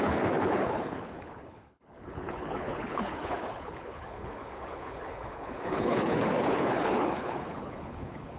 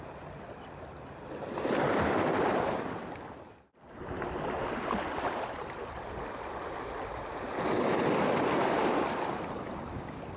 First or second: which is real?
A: second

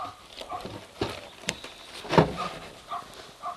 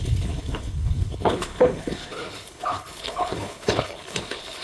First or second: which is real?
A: first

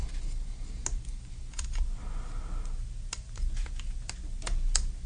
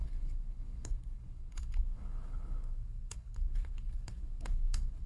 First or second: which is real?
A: first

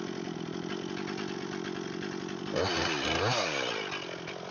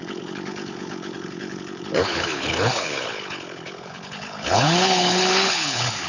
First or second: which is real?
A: first